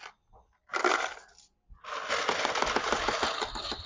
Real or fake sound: real